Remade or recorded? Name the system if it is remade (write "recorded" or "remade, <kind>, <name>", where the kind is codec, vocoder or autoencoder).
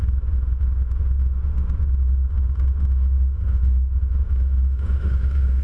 remade, autoencoder, DAC-VAE